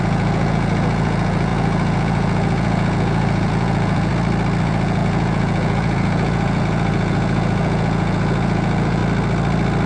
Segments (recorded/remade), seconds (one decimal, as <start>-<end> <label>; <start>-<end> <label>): 0.0-4.1 remade; 4.1-4.6 recorded; 4.6-9.0 remade; 9.0-9.9 recorded